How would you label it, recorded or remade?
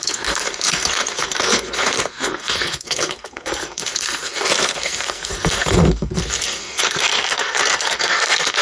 remade